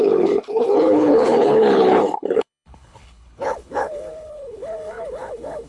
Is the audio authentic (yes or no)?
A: no